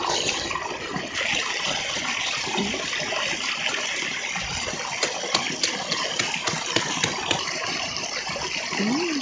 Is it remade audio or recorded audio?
remade